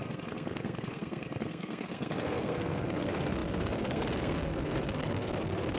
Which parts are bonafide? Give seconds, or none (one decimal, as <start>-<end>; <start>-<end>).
none